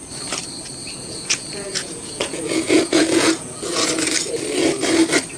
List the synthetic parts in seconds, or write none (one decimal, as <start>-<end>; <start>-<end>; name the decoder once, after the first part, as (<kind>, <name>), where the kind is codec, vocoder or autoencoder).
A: 0.8-4.0 (vocoder, Vocos)